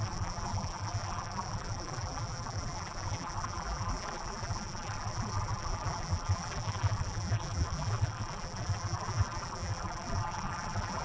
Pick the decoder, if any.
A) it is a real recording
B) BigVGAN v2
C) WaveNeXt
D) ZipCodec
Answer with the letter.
B